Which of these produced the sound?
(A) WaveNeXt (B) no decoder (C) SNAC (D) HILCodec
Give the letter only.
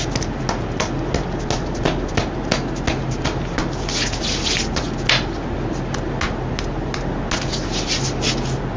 B